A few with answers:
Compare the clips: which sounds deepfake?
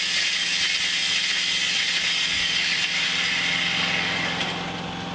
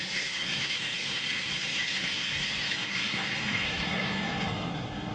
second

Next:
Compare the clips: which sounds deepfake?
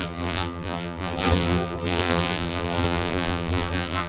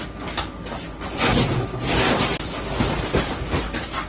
first